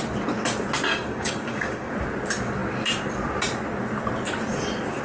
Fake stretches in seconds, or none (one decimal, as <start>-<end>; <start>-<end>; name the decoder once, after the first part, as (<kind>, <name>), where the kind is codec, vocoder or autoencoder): 0.9-1.9 (codec, DAC)